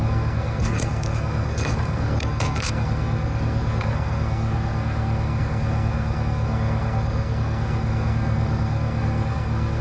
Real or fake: fake